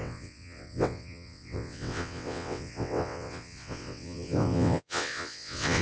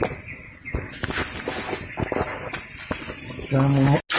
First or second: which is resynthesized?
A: first